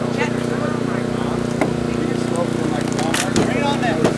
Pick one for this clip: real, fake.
real